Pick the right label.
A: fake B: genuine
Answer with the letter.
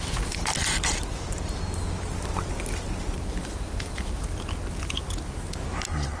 B